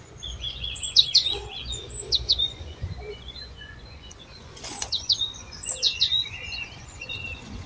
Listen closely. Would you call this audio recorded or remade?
remade